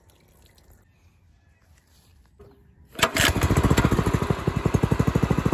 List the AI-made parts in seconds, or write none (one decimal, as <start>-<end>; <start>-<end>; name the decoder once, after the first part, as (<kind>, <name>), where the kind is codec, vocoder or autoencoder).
none